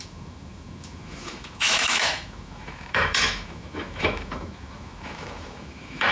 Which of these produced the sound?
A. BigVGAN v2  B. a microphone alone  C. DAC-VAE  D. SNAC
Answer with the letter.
C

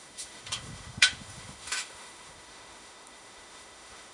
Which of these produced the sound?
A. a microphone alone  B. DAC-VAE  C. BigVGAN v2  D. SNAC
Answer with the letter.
B